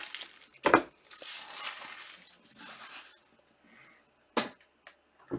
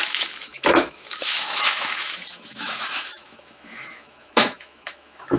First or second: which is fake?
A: second